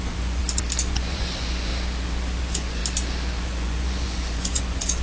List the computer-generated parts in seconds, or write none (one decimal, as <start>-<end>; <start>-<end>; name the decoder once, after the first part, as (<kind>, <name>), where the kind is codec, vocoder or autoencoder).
0.0-0.4 (vocoder, Vocos); 0.9-1.7; 2.4-2.8; 3.4-5.0